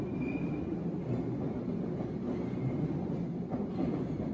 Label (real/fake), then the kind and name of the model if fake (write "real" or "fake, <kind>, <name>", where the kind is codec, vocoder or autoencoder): real